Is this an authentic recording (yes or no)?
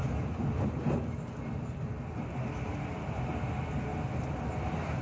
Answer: yes